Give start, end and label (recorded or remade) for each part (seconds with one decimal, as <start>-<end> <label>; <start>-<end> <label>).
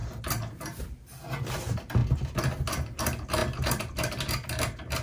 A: 0.0-5.0 recorded